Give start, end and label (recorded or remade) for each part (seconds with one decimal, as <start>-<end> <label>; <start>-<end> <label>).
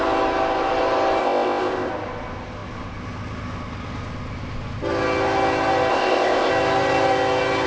0.0-1.2 recorded; 1.2-1.9 remade; 1.9-5.9 recorded; 5.9-6.5 remade; 6.5-7.7 recorded